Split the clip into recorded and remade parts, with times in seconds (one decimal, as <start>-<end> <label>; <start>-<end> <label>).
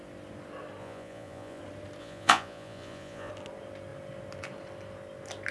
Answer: 0.0-0.8 recorded; 0.8-1.6 remade; 1.6-2.0 recorded; 2.0-3.3 remade; 3.3-5.5 recorded